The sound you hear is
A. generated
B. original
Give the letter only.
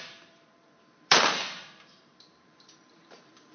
A